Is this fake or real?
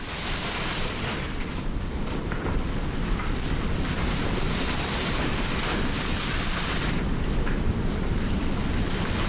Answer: fake